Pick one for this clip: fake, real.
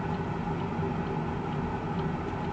real